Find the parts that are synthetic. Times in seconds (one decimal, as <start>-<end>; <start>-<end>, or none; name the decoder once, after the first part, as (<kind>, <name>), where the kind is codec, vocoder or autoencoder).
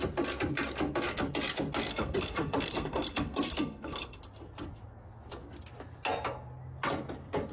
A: 1.9-4.2 (codec, SNAC)